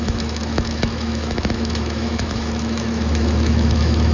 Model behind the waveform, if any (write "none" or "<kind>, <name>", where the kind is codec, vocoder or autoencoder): autoencoder, DAC-VAE